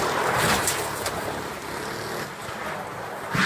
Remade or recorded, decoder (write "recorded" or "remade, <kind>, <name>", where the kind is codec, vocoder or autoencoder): remade, vocoder, BigVGAN v2